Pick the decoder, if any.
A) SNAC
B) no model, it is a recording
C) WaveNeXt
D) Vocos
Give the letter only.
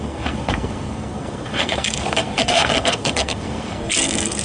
A